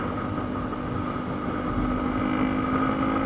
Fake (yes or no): no